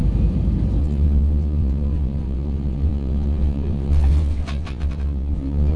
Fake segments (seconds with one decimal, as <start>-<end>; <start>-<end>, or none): 0.8-5.8